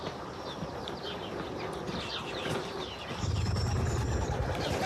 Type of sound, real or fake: real